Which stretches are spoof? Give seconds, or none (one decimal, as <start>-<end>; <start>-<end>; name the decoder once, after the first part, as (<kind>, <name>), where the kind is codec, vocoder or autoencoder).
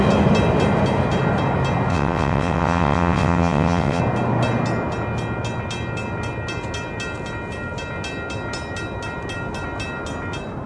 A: 1.9-4.0 (vocoder, WaveNeXt)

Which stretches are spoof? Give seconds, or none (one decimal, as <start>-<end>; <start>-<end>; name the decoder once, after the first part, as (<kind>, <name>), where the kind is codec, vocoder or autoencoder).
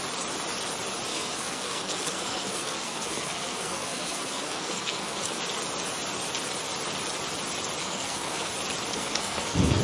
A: 1.1-5.4 (codec, SNAC); 7.8-8.5; 8.9-9.8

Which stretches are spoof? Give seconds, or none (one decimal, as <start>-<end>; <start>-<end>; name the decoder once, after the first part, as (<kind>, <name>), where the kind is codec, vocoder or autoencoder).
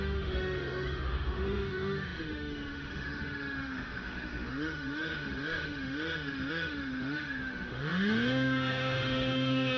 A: 0.0-9.8 (autoencoder, DAC-VAE)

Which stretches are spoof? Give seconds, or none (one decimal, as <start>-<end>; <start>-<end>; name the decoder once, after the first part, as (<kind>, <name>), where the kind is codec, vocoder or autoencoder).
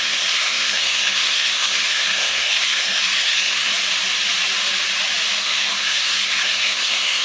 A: 0.0-3.7 (codec, SNAC); 5.4-7.2